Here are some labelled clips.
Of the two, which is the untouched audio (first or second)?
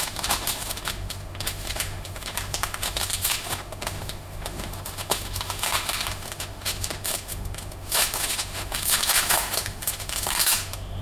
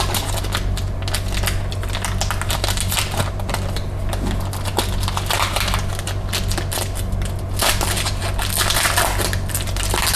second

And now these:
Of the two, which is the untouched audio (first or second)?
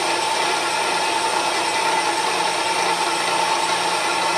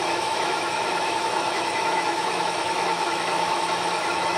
first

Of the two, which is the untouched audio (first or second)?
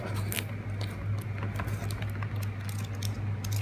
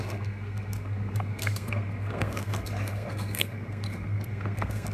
first